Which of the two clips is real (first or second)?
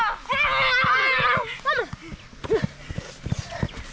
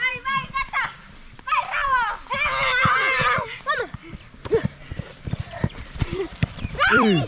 first